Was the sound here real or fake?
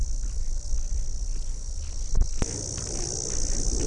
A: real